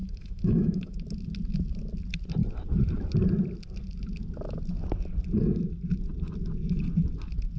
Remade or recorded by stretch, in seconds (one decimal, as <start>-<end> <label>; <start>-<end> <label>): 0.0-1.0 remade; 1.0-7.6 recorded